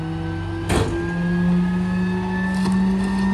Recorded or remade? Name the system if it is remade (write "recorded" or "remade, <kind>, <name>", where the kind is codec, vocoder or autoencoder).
recorded